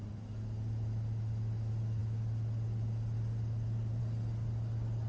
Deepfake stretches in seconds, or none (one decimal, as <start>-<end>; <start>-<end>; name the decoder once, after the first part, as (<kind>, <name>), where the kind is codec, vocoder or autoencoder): none